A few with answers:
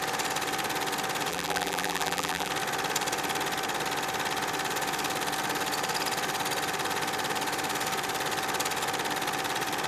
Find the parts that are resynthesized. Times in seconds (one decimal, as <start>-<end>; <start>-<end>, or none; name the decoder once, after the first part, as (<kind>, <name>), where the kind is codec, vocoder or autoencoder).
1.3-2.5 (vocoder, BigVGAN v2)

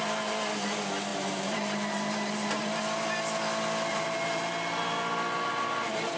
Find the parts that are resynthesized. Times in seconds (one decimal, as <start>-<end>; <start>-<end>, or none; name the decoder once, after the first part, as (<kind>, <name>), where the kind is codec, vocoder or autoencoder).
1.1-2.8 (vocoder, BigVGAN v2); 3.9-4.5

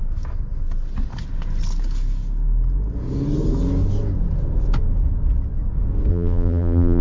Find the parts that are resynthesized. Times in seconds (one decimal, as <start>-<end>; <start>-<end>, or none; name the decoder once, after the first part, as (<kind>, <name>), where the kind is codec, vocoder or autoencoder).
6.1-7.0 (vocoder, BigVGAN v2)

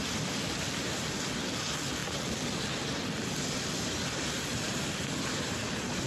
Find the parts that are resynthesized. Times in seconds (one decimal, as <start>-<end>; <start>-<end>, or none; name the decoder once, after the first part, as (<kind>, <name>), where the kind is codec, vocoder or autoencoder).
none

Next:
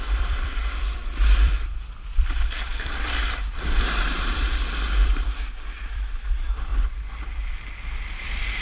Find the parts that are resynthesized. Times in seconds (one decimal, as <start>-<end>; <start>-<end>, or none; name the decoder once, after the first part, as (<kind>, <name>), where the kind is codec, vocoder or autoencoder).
0.0-6.7 (vocoder, BigVGAN v2); 8.0-8.6

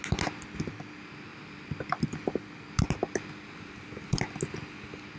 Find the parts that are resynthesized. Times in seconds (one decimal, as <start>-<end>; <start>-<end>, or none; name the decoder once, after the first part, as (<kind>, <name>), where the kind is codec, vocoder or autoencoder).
1.3-4.4 (vocoder, BigVGAN v2)

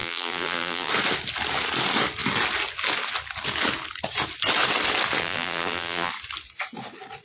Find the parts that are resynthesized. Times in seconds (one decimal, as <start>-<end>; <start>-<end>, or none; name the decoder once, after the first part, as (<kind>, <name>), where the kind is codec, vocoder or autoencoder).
0.0-0.9 (vocoder, BigVGAN v2); 5.2-6.1

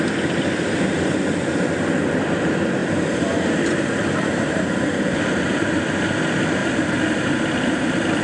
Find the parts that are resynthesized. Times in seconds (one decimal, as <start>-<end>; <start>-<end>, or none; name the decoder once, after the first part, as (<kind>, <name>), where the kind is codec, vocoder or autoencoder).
2.8-5.7 (vocoder, BigVGAN v2); 6.6-7.4